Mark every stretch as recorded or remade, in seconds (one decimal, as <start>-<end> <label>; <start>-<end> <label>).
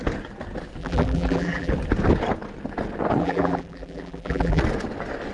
0.0-0.8 recorded; 0.8-1.7 remade; 1.7-3.2 recorded; 3.2-4.6 remade; 4.6-5.3 recorded